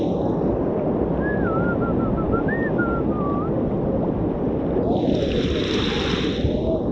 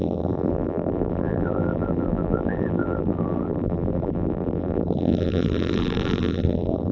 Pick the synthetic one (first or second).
second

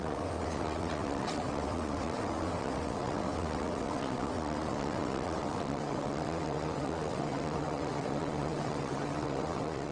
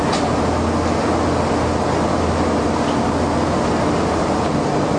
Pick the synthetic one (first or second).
first